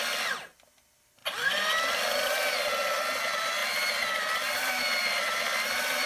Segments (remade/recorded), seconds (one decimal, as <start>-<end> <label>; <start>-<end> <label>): 0.0-1.2 remade; 1.2-1.9 recorded; 1.9-6.1 remade